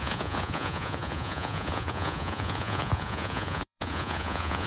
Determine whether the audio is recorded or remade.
remade